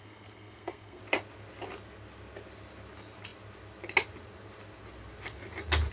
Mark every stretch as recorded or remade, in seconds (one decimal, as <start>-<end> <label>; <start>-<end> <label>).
0.0-1.0 remade; 1.0-5.9 recorded